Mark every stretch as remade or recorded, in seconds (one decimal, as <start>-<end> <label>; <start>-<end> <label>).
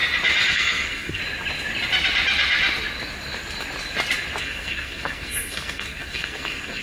0.0-0.5 recorded; 0.5-1.2 remade; 1.2-4.4 recorded; 4.4-6.8 remade